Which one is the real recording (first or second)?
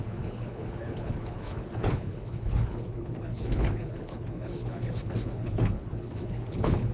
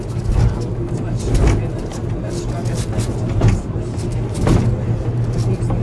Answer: second